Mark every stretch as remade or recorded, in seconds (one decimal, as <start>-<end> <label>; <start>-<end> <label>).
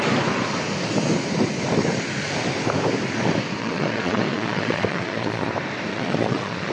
0.0-3.6 recorded; 3.6-5.5 remade; 5.5-5.9 recorded; 5.9-6.7 remade